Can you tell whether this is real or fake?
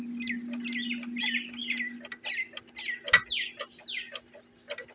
real